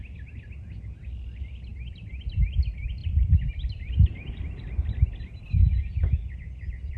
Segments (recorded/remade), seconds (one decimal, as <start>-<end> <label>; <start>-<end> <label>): 0.0-1.7 recorded; 1.7-2.2 remade; 2.2-3.0 recorded; 3.0-4.4 remade; 4.4-7.0 recorded